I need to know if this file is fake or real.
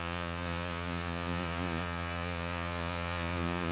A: fake